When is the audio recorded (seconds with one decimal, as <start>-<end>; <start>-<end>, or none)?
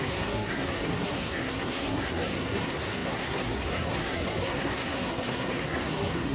none